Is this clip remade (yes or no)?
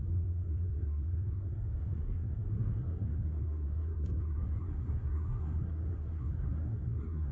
yes